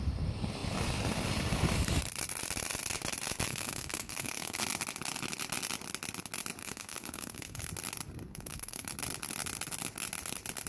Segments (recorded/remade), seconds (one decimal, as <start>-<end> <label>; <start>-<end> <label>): 0.0-3.5 recorded; 3.5-4.6 remade; 4.6-6.6 recorded; 6.6-7.7 remade; 7.7-8.3 recorded; 8.3-8.9 remade; 8.9-10.7 recorded